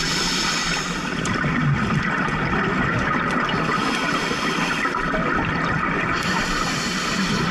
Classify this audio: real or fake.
real